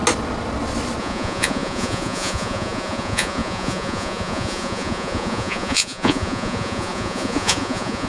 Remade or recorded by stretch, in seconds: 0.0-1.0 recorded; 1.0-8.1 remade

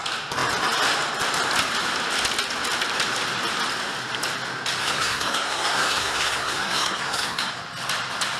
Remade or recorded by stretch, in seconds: 0.0-4.8 recorded; 4.8-7.5 remade; 7.5-8.4 recorded